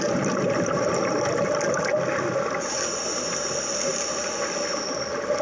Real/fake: real